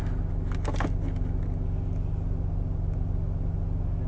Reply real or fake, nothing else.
real